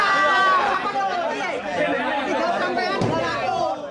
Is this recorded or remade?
recorded